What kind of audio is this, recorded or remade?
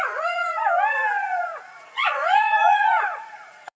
remade